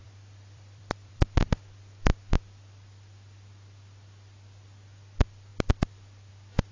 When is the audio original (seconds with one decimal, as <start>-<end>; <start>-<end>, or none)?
2.2-5.5; 6.3-6.7